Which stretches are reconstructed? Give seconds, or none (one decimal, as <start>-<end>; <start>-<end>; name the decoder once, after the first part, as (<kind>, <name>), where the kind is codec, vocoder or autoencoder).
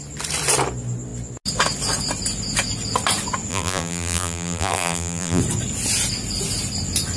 3.5-5.4 (vocoder, BigVGAN v2)